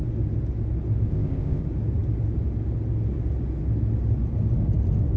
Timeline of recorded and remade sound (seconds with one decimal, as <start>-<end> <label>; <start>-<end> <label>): 0.0-1.1 recorded; 1.1-1.6 remade; 1.6-5.2 recorded